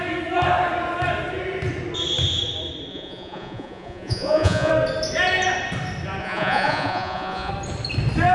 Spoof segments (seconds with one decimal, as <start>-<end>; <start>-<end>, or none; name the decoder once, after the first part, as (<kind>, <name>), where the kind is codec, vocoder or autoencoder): 2.9-4.7 (vocoder, Vocos); 6.2-7.5